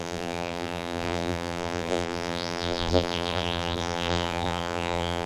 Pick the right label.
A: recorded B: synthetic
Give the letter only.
B